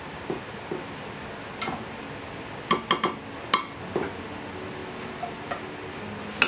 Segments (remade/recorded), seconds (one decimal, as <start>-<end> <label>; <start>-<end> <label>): 0.0-6.5 recorded